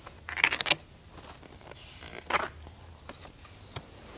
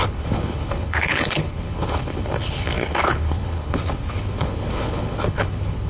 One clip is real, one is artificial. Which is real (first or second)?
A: first